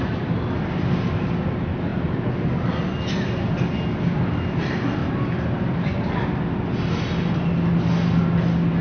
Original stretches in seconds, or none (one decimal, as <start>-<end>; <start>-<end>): 0.0-8.8